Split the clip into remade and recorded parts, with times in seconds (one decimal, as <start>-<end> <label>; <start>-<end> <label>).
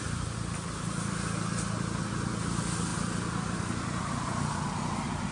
0.0-5.3 recorded